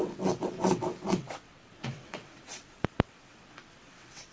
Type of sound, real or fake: fake